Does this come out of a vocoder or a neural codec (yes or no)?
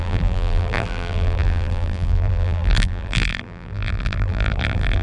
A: yes